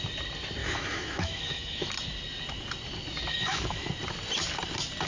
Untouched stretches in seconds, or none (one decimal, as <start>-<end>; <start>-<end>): 0.0-0.6; 1.9-3.3; 3.9-5.1